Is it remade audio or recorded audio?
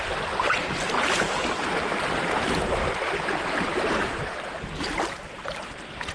recorded